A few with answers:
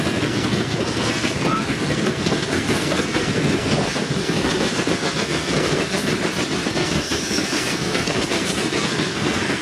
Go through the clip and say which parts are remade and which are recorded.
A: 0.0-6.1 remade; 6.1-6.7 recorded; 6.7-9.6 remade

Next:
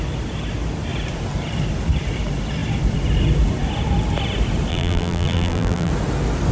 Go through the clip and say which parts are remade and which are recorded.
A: 0.0-4.7 recorded; 4.7-5.9 remade; 5.9-6.5 recorded

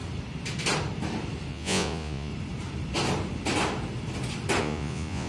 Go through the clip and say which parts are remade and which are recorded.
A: 0.0-1.5 recorded; 1.5-2.3 remade; 2.3-4.6 recorded; 4.6-5.3 remade

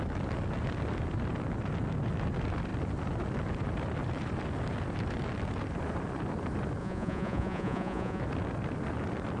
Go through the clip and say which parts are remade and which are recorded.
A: 0.0-6.8 recorded; 6.8-8.2 remade; 8.2-9.4 recorded

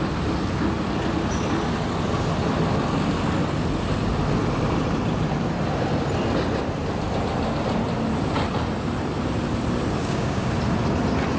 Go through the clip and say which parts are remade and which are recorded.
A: 0.0-10.0 recorded; 10.0-10.5 remade; 10.5-11.4 recorded

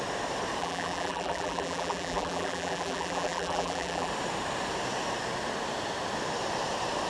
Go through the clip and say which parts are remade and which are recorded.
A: 0.0-0.6 recorded; 0.6-4.1 remade; 4.1-7.1 recorded

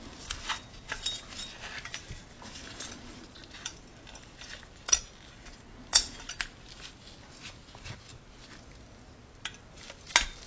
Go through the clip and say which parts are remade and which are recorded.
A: 0.0-10.5 recorded

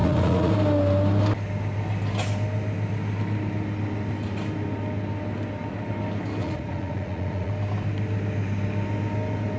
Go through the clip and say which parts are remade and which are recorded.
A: 0.0-0.5 remade; 0.5-6.4 recorded; 6.4-7.5 remade; 7.5-9.6 recorded